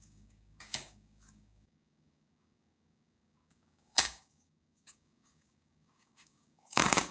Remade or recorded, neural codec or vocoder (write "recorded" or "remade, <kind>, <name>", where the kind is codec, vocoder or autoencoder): remade, codec, DAC